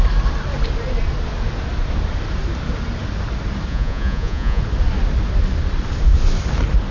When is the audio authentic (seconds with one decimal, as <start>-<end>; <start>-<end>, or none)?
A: 0.0-3.7; 4.6-6.9